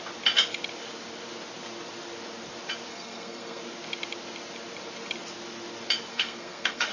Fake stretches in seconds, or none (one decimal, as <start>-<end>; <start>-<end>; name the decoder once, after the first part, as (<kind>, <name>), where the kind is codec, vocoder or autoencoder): 2.9-3.6 (codec, SNAC); 6.1-6.9